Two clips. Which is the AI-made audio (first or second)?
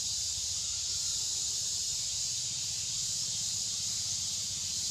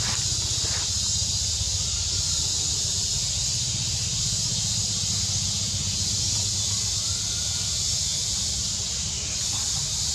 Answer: first